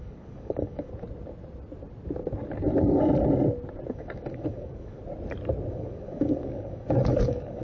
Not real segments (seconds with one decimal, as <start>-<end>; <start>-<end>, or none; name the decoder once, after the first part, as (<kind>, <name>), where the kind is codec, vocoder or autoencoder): 0.0-0.9 (codec, DAC); 3.9-5.0; 5.7-7.6